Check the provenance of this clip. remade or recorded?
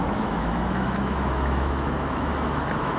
remade